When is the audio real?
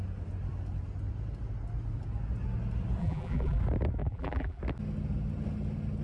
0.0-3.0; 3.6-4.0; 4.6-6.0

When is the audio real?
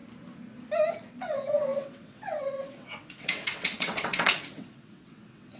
0.0-1.2